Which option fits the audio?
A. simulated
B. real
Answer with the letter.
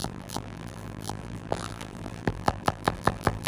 A